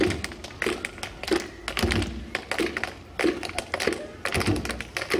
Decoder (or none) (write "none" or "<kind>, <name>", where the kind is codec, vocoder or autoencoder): none